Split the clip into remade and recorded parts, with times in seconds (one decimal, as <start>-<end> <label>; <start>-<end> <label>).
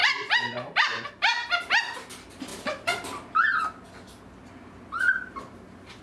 0.0-1.1 remade; 1.1-2.5 recorded; 2.5-3.6 remade; 3.6-6.0 recorded